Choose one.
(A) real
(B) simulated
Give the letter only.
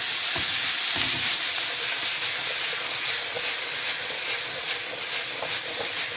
A